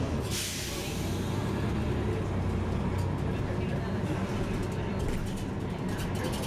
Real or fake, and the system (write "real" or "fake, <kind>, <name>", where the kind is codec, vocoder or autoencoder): real